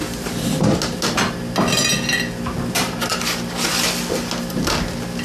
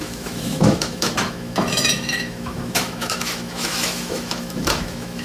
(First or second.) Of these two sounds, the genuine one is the first